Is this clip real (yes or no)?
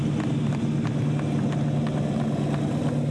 yes